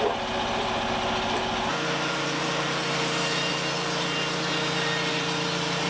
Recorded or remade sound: recorded